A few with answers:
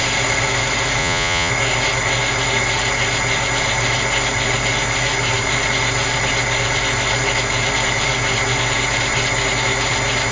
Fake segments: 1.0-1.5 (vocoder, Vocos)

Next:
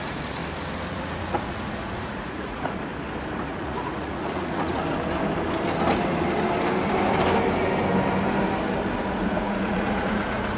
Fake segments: 0.0-0.4 (vocoder, Vocos); 0.9-2.9; 3.5-4.8; 9.0-10.6